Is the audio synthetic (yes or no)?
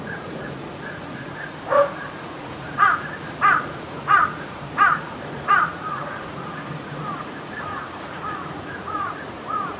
yes